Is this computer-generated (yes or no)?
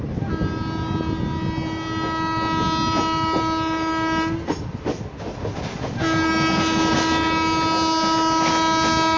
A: no